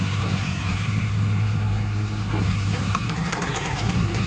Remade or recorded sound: remade